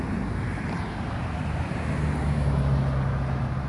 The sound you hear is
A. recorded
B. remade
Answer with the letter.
A